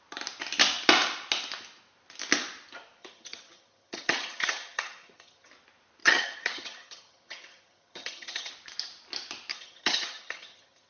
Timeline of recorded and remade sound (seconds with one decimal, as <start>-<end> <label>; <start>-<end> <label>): 0.0-3.0 recorded; 3.0-5.5 remade; 5.5-6.0 recorded; 6.0-8.5 remade; 8.5-9.5 recorded; 9.5-10.9 remade